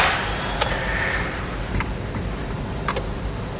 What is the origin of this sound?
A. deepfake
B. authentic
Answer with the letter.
B